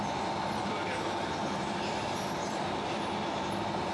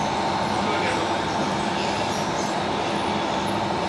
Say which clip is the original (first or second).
second